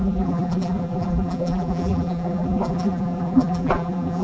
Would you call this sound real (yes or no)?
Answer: no